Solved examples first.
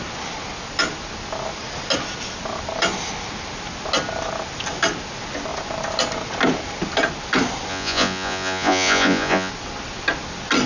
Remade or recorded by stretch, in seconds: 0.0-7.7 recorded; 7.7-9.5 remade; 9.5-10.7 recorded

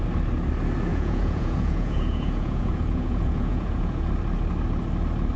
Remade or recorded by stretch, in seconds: 0.0-0.9 recorded; 0.9-4.1 remade; 4.1-5.4 recorded

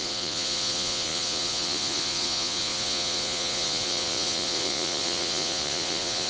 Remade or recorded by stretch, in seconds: 0.0-6.3 remade

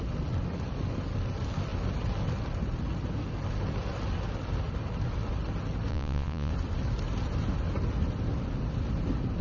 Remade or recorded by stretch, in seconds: 0.0-5.9 recorded; 5.9-6.5 remade; 6.5-9.4 recorded

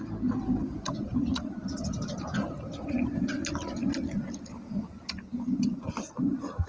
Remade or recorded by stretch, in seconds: 0.0-6.7 recorded